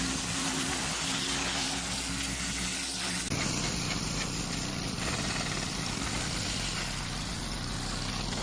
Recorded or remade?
recorded